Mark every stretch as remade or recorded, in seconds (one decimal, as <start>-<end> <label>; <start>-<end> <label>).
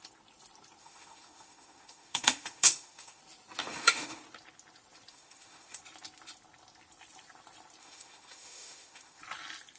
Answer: 0.0-0.8 recorded; 0.8-3.2 remade; 3.2-3.6 recorded; 3.6-4.2 remade; 4.2-5.1 recorded; 5.1-5.8 remade; 5.8-7.8 recorded; 7.8-9.2 remade; 9.2-9.8 recorded